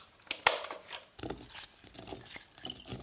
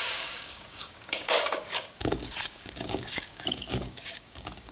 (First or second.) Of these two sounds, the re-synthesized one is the second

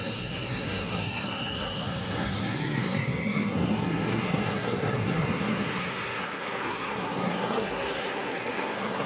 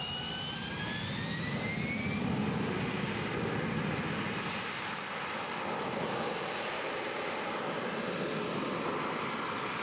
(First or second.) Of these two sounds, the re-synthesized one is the first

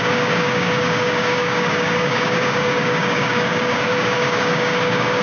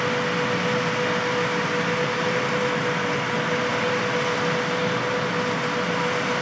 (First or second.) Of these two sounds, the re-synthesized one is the first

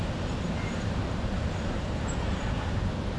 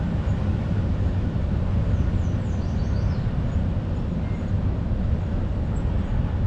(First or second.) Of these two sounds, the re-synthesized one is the first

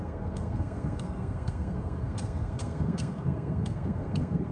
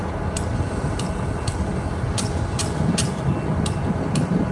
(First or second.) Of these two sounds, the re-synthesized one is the first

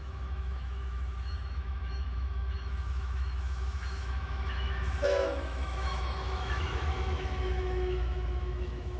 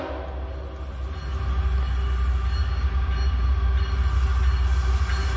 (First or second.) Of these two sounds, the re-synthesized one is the first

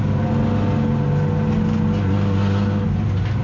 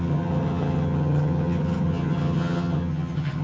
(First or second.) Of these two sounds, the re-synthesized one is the second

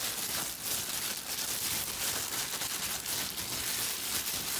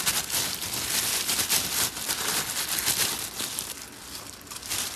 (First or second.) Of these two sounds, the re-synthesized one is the second